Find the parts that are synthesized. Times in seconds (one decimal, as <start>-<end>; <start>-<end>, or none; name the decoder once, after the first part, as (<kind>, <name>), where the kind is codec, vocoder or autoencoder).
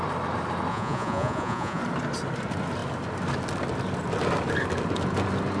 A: 0.7-1.8 (vocoder, Vocos)